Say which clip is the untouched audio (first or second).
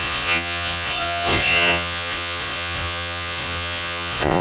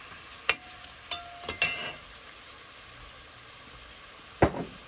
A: second